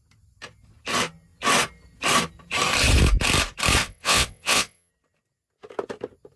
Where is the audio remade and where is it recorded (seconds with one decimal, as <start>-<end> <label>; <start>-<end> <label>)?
0.0-3.8 recorded; 3.8-4.9 remade; 4.9-6.4 recorded